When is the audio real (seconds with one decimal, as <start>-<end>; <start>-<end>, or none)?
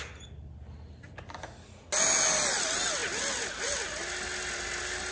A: 0.0-5.1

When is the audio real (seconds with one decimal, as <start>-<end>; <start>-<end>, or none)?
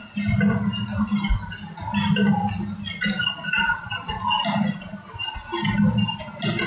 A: 0.0-6.7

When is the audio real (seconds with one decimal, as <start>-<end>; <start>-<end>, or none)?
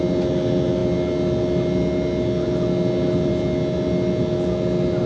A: 0.0-5.1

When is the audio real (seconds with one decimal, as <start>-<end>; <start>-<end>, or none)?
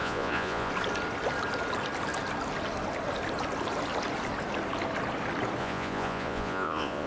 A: 0.7-5.6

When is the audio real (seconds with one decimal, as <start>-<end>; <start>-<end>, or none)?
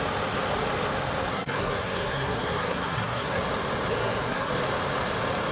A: 0.0-1.3; 3.4-4.0; 4.5-5.5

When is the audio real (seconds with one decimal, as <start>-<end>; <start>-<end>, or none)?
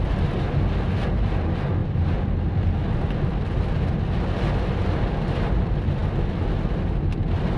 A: 0.0-7.6